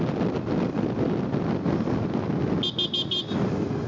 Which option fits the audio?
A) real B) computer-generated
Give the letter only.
A